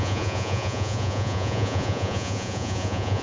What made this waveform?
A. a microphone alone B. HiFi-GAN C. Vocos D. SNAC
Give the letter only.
C